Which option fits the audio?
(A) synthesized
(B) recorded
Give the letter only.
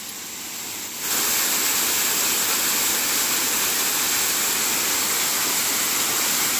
B